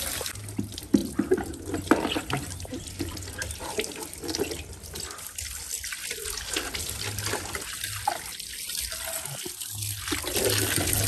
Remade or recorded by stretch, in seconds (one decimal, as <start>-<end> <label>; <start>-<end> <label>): 0.0-1.0 recorded; 1.0-3.9 remade; 3.9-11.1 recorded